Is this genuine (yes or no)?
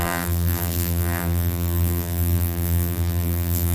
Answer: no